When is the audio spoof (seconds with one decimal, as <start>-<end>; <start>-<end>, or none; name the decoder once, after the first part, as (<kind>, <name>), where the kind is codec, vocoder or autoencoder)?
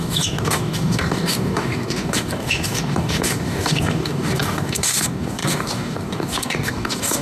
0.0-7.2 (codec, DAC)